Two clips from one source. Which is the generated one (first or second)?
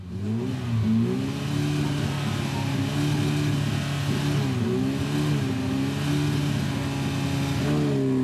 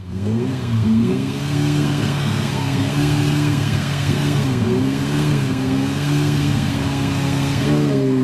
second